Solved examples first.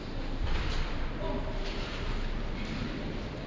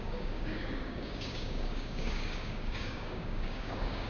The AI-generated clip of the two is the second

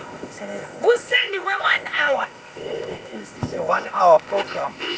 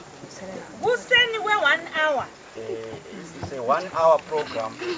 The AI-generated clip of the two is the first